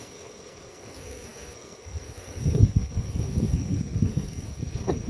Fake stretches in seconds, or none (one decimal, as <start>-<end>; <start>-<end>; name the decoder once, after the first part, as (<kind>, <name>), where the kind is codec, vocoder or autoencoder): 0.0-5.1 (codec, SNAC)